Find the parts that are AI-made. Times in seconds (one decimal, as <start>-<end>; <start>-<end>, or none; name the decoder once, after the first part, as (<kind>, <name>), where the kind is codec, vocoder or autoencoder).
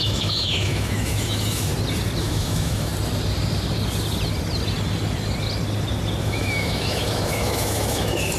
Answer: 0.0-1.7 (autoencoder, DAC-VAE); 2.2-2.9; 6.2-8.4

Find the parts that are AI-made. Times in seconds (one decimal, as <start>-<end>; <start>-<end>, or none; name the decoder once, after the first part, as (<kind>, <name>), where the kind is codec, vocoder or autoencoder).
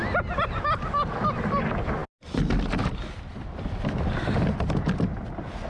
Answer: none